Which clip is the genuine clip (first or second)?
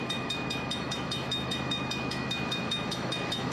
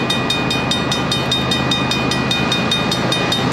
second